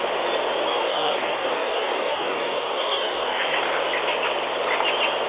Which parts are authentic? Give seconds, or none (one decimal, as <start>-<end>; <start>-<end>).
0.0-0.7; 3.6-5.3